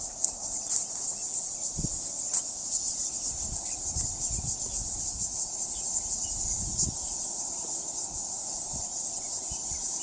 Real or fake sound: real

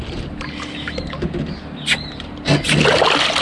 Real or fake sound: real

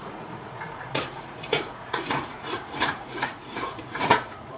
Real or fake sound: fake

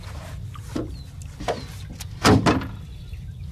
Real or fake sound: real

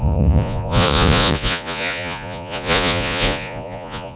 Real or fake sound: fake